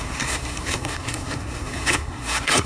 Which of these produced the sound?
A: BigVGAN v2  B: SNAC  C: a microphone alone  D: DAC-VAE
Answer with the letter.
B